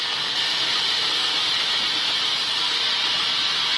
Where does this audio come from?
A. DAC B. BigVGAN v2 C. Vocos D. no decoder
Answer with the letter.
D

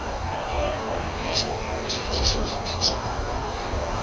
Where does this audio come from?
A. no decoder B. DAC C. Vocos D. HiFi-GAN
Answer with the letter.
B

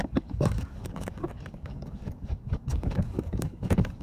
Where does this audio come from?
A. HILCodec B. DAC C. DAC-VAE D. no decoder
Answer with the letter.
B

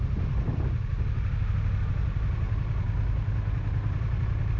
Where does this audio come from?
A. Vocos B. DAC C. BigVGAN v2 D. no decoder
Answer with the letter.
D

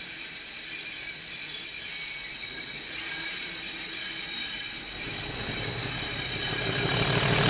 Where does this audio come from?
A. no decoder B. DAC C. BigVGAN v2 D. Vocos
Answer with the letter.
A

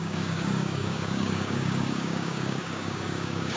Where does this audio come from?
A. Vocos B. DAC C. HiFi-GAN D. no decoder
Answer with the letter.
B